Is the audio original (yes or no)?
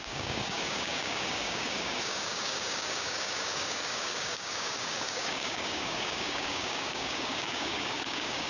no